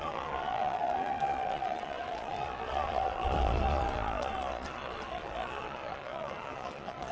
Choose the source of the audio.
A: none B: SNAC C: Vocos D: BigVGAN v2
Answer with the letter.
C